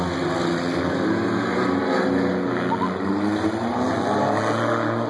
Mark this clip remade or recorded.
recorded